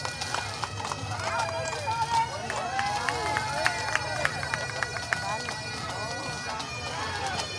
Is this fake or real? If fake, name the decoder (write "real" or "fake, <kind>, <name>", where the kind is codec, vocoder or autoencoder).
real